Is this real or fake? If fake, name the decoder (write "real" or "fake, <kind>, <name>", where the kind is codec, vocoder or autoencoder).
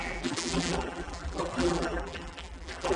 fake, vocoder, BigVGAN v2